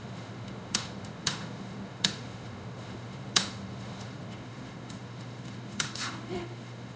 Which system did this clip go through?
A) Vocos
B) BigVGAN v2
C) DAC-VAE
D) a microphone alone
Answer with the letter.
C